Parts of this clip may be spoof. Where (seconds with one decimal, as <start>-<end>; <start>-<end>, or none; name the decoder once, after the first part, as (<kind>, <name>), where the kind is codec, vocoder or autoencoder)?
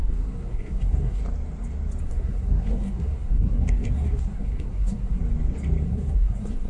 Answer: 0.0-1.2 (codec, SNAC); 2.0-5.2; 5.8-6.7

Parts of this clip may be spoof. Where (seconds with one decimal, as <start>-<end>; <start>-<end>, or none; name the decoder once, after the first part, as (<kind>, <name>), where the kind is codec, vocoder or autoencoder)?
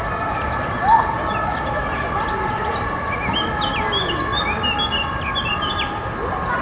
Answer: none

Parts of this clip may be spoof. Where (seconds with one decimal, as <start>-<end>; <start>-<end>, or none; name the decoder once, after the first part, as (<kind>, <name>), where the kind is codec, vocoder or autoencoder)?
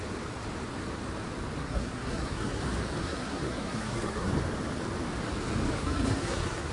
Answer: 1.6-2.6 (codec, SNAC); 3.0-4.3; 5.8-6.7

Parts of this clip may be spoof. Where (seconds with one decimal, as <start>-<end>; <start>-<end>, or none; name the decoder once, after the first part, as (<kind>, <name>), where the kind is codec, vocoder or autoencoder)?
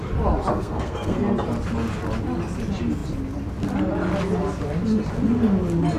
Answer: 0.5-1.2 (codec, SNAC)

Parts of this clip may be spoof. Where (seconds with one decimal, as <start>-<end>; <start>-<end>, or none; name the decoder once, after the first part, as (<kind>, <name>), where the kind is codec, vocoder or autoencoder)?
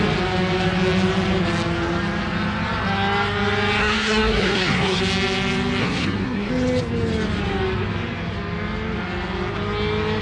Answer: 3.8-5.0 (codec, SNAC); 5.8-6.5